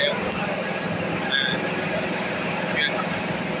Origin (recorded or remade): recorded